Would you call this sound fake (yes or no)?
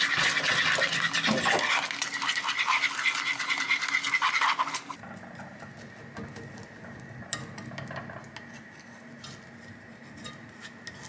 no